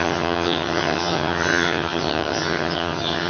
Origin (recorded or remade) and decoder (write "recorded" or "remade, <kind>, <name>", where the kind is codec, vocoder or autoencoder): remade, vocoder, HiFi-GAN